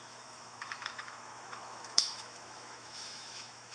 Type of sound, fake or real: fake